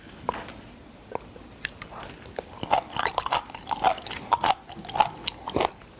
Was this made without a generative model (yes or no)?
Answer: yes